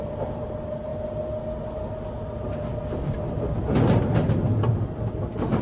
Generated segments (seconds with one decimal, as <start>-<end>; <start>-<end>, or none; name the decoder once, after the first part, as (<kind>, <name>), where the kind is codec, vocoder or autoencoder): none